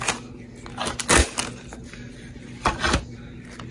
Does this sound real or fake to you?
real